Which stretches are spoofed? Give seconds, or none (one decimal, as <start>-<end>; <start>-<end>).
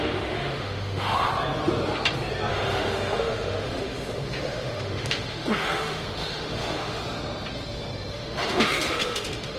0.0-1.3; 2.5-7.0; 8.1-9.6